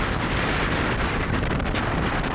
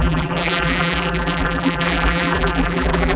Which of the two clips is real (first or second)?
first